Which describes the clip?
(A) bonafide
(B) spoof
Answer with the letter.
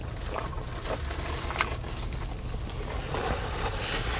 A